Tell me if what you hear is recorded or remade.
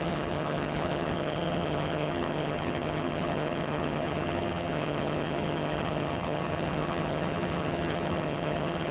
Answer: remade